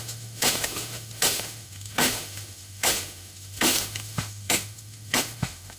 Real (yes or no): no